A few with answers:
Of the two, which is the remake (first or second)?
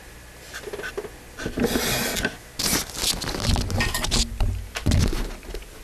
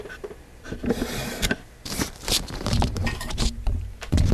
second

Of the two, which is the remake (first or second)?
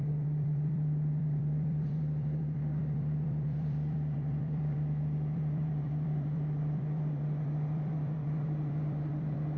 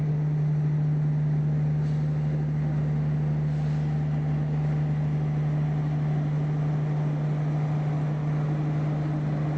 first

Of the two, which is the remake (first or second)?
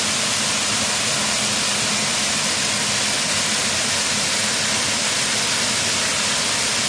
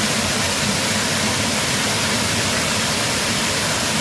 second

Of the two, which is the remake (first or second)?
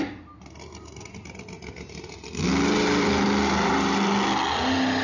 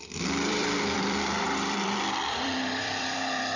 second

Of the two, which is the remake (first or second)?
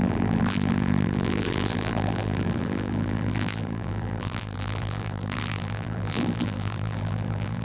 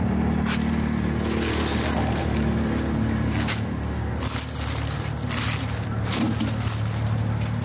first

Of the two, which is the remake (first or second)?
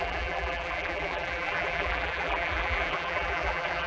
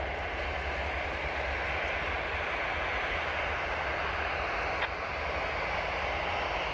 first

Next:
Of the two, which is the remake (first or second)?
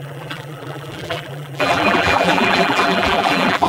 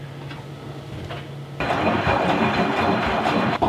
first